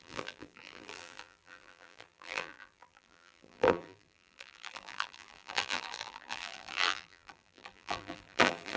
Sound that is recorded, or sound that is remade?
remade